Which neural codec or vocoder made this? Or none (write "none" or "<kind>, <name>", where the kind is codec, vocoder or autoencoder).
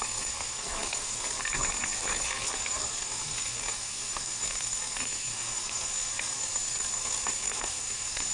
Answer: codec, SNAC